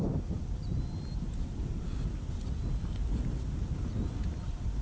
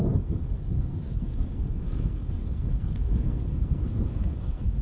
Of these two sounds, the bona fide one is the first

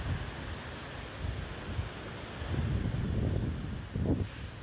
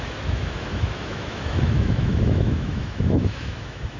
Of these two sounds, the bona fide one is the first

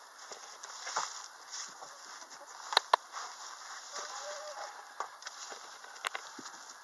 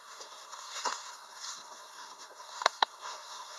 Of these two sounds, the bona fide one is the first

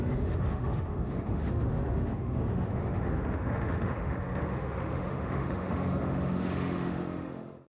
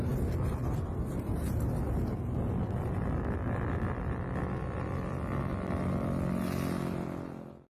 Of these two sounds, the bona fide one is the second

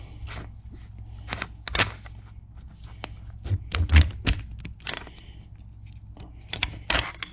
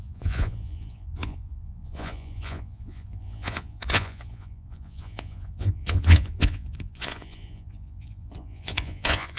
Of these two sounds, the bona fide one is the first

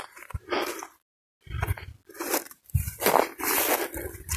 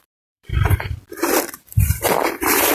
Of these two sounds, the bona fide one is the first